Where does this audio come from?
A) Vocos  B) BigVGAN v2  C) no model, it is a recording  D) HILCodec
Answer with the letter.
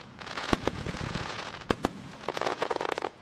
A